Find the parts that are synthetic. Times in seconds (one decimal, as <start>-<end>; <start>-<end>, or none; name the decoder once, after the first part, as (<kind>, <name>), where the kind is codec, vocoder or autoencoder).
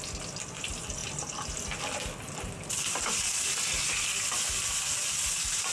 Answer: none